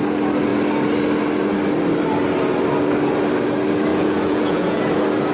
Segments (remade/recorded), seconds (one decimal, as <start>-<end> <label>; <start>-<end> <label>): 0.0-3.9 recorded; 3.9-4.8 remade; 4.8-5.3 recorded